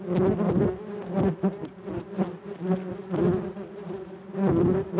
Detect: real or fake real